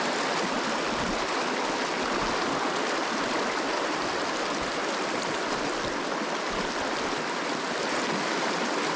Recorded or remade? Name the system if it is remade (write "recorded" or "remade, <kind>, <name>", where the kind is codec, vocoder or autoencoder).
recorded